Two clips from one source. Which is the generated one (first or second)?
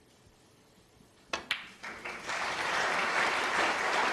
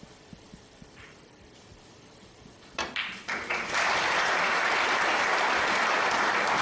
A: second